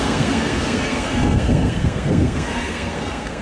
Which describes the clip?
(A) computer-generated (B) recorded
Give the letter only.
A